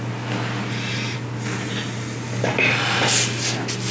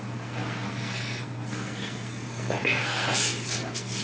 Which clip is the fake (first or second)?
second